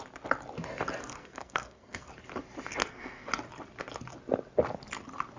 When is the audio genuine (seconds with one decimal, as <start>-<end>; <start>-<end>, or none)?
0.0-1.0; 2.1-2.8; 3.3-5.4